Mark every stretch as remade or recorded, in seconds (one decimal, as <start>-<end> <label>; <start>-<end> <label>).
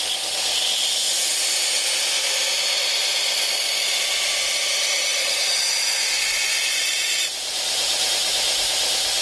0.0-5.1 recorded; 5.1-8.1 remade; 8.1-9.2 recorded